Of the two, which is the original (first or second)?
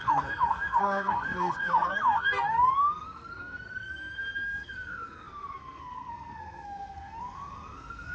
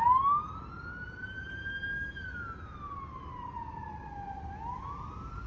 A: second